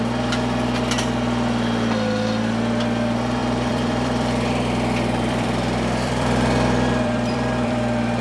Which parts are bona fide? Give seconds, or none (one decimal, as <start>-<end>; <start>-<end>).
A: 0.0-3.4